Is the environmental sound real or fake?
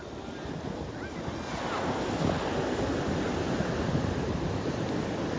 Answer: real